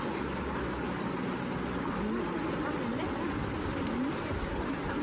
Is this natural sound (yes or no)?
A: yes